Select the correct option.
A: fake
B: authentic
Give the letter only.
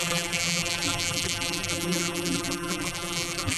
A